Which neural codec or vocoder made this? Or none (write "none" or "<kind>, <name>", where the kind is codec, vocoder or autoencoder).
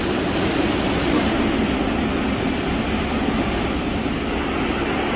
none